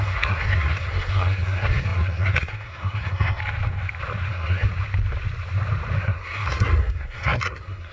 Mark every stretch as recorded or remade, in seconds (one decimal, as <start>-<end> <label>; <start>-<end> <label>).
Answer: 0.0-3.4 remade; 3.4-4.3 recorded; 4.3-4.7 remade; 4.7-6.0 recorded; 6.0-7.9 remade

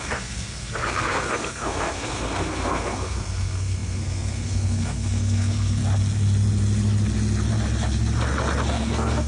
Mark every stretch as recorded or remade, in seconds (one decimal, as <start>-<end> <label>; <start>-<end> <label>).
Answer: 0.0-5.8 remade; 5.8-8.7 recorded; 8.7-9.3 remade